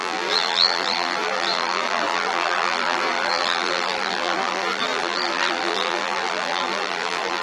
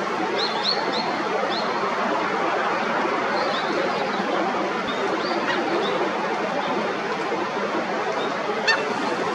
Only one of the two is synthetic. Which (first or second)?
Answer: first